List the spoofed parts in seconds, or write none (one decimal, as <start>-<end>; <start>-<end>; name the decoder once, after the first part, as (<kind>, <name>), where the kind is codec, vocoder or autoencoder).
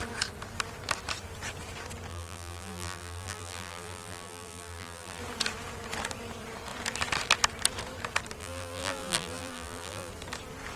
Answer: 2.1-5.2 (vocoder, BigVGAN v2); 8.4-10.1